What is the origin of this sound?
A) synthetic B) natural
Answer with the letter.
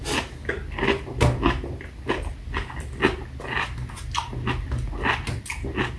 B